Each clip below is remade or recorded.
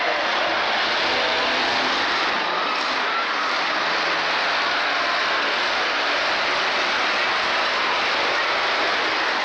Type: recorded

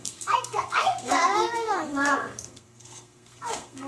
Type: remade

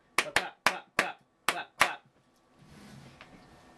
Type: recorded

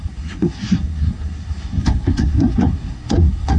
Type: remade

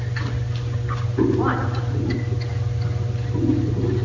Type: recorded